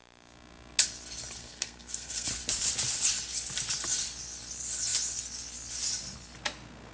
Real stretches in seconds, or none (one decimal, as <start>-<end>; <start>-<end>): 0.0-1.4; 2.3-6.9